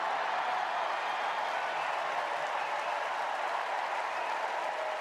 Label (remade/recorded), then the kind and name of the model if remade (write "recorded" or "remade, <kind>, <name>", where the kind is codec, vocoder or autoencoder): recorded